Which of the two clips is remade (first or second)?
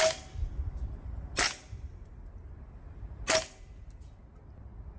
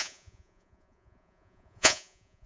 second